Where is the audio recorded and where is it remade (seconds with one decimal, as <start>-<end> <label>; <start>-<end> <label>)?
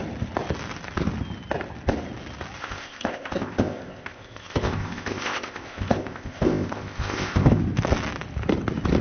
0.0-2.6 recorded; 2.6-7.6 remade; 7.6-9.0 recorded